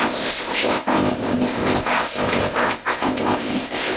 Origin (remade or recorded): remade